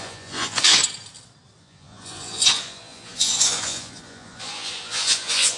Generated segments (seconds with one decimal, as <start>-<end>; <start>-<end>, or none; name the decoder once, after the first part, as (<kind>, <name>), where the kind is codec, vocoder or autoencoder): 0.0-0.8 (vocoder, Vocos); 1.6-5.6